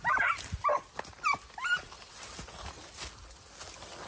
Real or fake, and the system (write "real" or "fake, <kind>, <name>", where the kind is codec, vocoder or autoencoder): real